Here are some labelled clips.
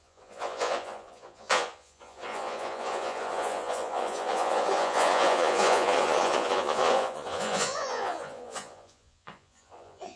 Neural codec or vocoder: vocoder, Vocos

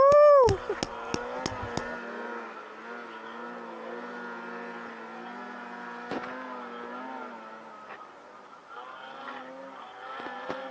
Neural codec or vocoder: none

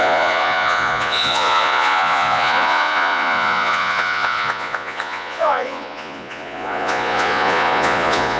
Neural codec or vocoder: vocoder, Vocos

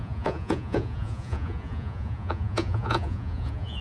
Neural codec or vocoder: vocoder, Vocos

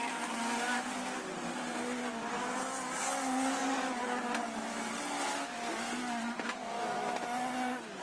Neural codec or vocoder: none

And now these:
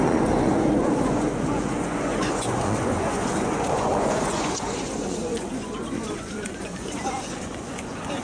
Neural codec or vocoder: vocoder, Vocos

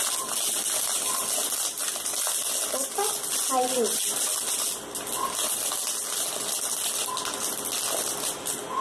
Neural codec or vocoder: none